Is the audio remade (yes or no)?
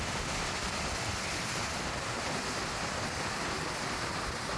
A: no